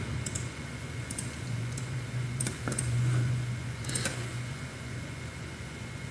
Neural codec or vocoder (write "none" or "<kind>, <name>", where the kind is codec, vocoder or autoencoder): vocoder, Vocos